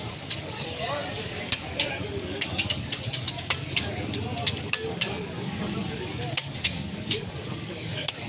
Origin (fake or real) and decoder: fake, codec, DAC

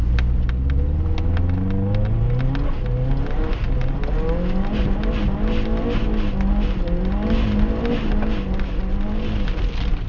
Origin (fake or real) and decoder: real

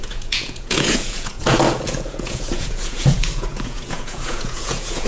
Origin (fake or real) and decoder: fake, vocoder, Vocos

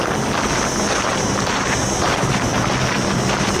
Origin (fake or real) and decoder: real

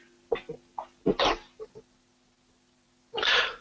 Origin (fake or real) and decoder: real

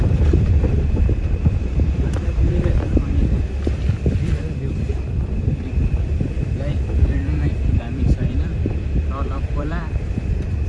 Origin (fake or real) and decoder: fake, vocoder, BigVGAN v2